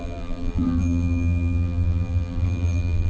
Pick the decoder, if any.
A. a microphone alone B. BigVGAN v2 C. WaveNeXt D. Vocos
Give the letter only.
B